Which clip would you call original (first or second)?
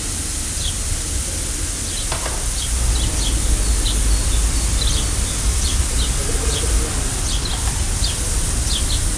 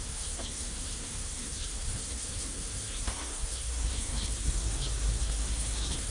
first